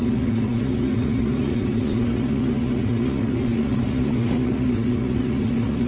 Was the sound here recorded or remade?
remade